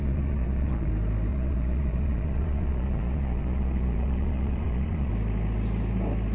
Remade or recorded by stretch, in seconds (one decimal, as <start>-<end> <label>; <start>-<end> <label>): 0.0-0.9 remade; 0.9-1.3 recorded; 1.3-5.1 remade; 5.1-6.3 recorded